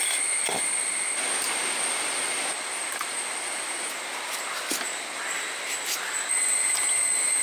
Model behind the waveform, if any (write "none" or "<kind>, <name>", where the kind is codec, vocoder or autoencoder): none